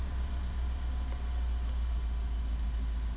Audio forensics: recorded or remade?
recorded